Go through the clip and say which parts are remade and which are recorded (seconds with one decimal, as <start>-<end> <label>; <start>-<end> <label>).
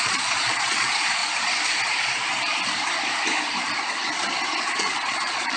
0.0-1.2 remade; 1.2-4.6 recorded; 4.6-5.6 remade